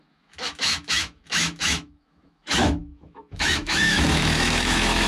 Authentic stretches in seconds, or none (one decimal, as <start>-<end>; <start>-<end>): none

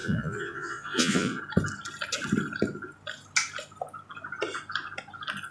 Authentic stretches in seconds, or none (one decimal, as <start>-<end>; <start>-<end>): 1.4-5.5

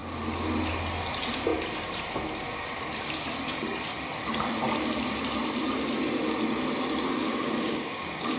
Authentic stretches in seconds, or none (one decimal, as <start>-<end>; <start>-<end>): 0.0-7.2

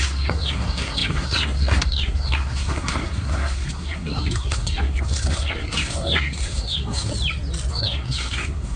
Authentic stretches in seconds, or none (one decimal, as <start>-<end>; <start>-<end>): 7.1-7.7

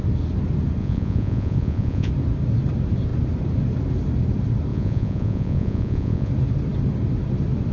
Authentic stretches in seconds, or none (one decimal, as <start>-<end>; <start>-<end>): 0.0-0.8; 2.1-4.7; 6.3-7.7

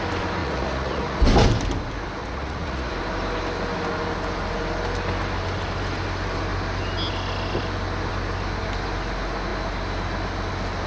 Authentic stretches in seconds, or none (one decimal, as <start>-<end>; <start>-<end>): 0.0-0.4; 1.2-2.2; 2.9-10.9